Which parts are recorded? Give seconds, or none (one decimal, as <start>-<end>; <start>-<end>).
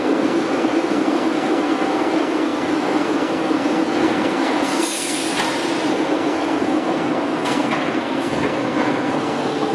5.2-5.9